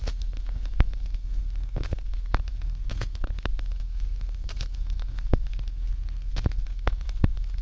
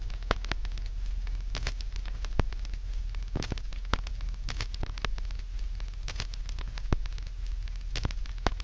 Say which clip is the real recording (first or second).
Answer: second